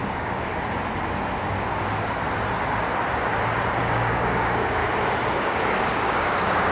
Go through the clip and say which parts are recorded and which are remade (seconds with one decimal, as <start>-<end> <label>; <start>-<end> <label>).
0.0-0.5 remade; 0.5-3.8 recorded; 3.8-4.8 remade; 4.8-5.3 recorded; 5.3-6.7 remade